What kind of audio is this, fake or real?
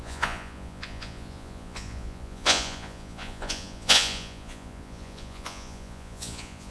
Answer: fake